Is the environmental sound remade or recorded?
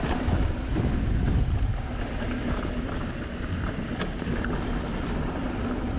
recorded